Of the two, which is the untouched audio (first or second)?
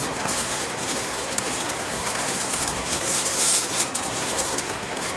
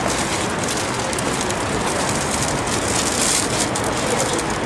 second